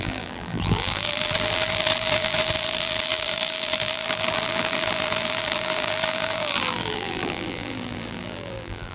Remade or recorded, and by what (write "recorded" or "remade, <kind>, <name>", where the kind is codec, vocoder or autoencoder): remade, vocoder, BigVGAN v2